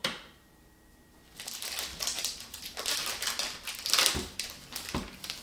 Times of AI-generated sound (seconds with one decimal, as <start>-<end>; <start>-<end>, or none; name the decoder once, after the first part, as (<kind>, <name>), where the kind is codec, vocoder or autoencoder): 0.0-1.2 (vocoder, BigVGAN v2); 1.9-3.1